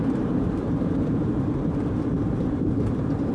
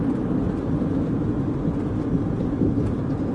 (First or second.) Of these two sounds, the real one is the second